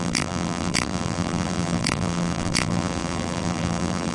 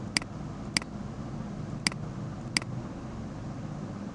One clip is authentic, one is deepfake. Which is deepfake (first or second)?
first